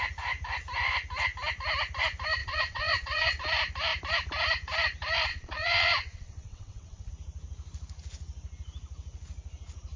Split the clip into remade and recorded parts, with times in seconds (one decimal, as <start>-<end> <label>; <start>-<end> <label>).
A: 0.0-2.4 recorded; 2.4-3.4 remade; 3.4-5.3 recorded; 5.3-7.1 remade; 7.1-10.0 recorded